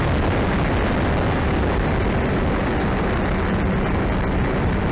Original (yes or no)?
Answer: yes